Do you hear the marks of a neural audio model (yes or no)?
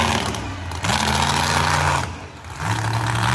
no